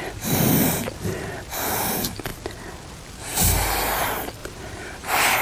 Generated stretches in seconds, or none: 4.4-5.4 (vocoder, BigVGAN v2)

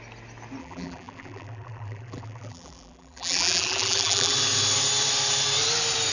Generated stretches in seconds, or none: 0.6-4.3 (vocoder, BigVGAN v2)

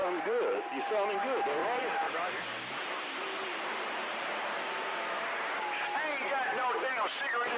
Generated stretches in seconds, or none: 0.0-0.7 (vocoder, BigVGAN v2); 1.6-5.2

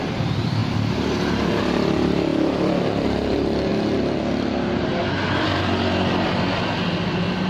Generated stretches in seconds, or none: 0.0-0.6 (vocoder, BigVGAN v2); 1.6-3.7

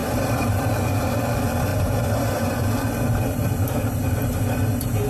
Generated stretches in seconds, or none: 0.0-0.7 (vocoder, BigVGAN v2); 1.7-2.7

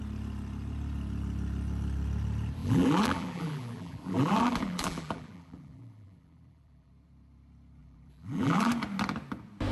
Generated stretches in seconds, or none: 2.6-6.9 (vocoder, BigVGAN v2); 7.8-8.7

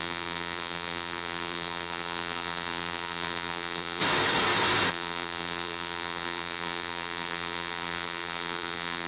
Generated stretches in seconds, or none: 0.0-4.0 (vocoder, BigVGAN v2); 4.9-9.1

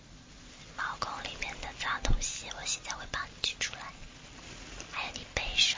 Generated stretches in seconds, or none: none